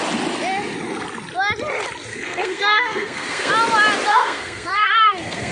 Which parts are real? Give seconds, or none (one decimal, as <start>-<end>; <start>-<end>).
0.0-2.1; 3.5-4.1